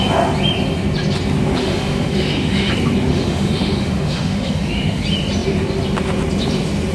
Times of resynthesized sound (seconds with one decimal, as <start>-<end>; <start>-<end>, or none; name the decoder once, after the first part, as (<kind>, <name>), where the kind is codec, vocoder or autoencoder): 1.6-2.7 (autoencoder, DAC-VAE); 3.1-5.0